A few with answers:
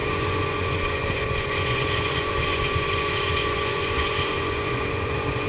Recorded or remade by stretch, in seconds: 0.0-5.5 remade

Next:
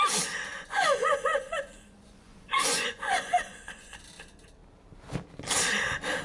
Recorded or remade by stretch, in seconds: 0.0-0.5 recorded; 0.5-4.0 remade; 4.0-6.2 recorded